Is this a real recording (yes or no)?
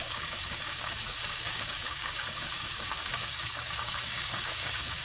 no